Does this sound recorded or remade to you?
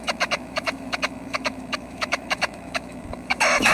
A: remade